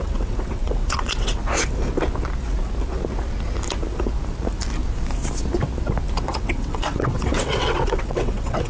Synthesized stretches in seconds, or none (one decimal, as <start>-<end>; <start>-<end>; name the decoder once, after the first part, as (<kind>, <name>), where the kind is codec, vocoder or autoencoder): 0.0-1.4 (vocoder, WaveNeXt); 6.2-8.7